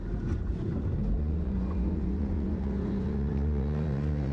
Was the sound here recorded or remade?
remade